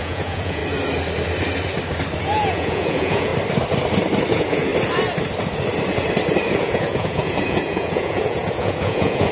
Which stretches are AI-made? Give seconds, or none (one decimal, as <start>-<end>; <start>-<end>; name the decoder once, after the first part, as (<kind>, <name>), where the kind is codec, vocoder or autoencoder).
0.0-0.6 (vocoder, Vocos); 2.2-3.3; 4.3-4.7; 6.5-9.3